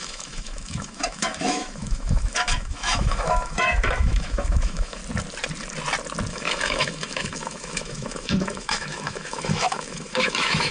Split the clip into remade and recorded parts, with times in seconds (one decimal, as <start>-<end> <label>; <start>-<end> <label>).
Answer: 0.0-5.0 remade; 5.0-6.3 recorded; 6.3-10.7 remade